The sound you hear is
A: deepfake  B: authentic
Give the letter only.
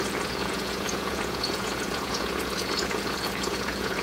A